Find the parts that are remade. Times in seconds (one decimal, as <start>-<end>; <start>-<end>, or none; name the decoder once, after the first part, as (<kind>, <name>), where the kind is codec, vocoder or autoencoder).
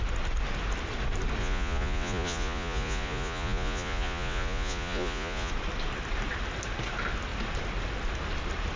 1.4-5.5 (vocoder, Vocos)